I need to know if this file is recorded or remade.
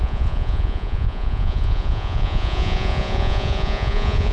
remade